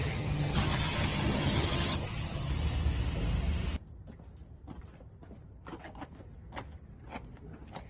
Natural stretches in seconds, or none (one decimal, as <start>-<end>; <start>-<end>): 2.5-7.9